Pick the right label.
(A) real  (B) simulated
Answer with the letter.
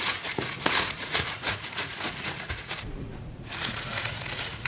B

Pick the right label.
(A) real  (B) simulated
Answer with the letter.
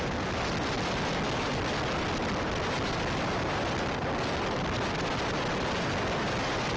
A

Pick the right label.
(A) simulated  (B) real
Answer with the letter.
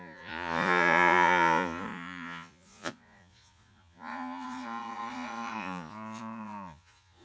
A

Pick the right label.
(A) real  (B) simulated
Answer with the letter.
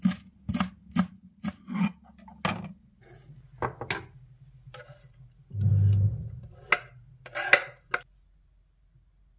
A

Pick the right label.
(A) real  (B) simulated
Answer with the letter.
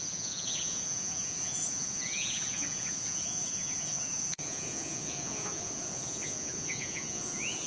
B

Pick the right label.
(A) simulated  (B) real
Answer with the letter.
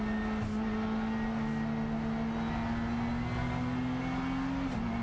B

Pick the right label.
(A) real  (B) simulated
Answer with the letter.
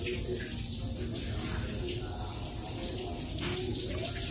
A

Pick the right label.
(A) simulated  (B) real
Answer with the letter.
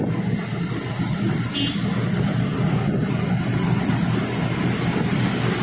B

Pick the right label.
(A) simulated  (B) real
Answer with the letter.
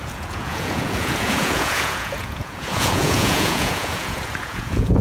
A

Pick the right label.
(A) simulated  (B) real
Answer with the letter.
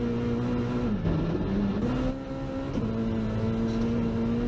B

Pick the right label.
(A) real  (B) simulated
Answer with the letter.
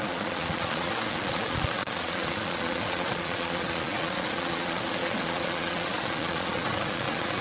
B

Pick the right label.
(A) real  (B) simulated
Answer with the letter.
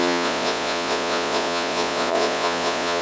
B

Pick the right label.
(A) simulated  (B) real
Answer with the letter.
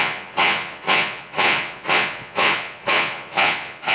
A